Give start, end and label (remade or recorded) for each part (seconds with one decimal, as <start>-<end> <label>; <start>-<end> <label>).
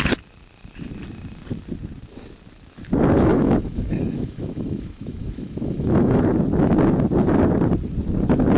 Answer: 0.0-3.3 recorded; 3.3-6.2 remade; 6.2-8.6 recorded